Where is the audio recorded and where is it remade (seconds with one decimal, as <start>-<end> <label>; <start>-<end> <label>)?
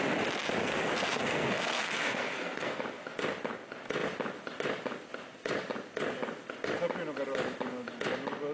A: 0.0-0.6 recorded; 0.6-2.8 remade; 2.8-8.5 recorded